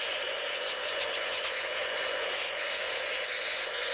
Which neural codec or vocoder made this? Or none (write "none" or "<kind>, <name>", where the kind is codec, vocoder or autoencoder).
vocoder, Vocos